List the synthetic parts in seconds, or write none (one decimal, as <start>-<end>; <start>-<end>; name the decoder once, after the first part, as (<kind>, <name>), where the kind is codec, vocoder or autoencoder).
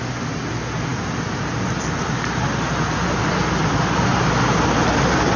none